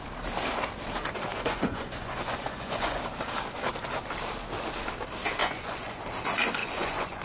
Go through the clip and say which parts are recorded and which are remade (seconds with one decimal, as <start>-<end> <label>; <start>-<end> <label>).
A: 0.0-1.3 recorded; 1.3-3.0 remade; 3.0-5.4 recorded; 5.4-6.0 remade; 6.0-6.6 recorded; 6.6-7.2 remade